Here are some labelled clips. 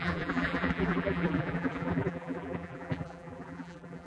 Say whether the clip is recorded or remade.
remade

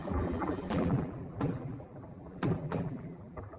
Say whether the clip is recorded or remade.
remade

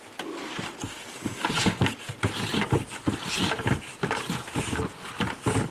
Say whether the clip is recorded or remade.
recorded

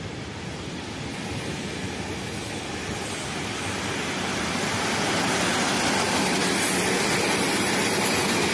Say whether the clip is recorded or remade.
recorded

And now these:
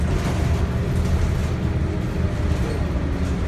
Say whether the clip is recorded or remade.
recorded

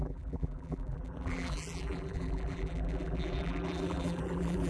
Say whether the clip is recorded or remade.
remade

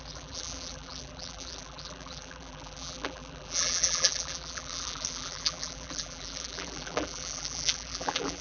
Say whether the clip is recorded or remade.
remade